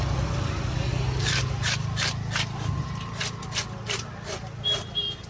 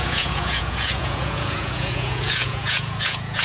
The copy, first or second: second